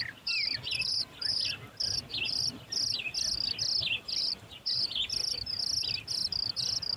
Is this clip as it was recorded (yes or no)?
yes